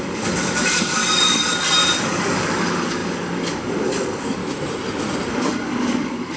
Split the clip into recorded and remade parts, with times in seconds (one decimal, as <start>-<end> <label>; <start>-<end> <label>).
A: 0.0-1.0 remade; 1.0-2.0 recorded; 2.0-4.4 remade; 4.4-5.3 recorded; 5.3-6.4 remade

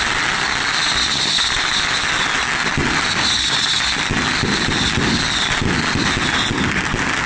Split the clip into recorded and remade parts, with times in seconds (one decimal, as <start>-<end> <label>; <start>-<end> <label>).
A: 0.0-7.3 recorded

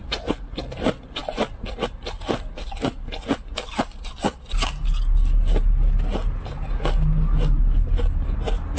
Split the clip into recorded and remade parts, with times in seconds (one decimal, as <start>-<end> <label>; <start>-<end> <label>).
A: 0.0-8.8 recorded

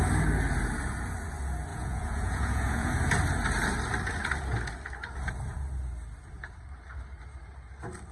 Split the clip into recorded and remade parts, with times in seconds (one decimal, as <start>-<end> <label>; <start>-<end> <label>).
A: 0.0-1.7 recorded; 1.7-2.9 remade; 2.9-8.1 recorded

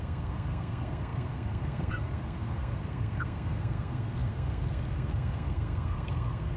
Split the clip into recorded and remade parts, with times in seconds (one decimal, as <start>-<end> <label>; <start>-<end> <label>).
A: 0.0-6.6 remade

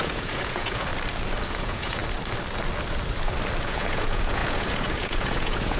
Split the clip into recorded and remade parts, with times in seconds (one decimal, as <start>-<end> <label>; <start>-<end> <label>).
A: 0.0-0.9 remade; 0.9-1.5 recorded; 1.5-2.0 remade; 2.0-3.6 recorded; 3.6-5.8 remade